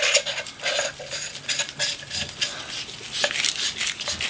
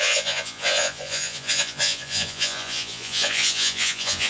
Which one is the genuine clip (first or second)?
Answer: first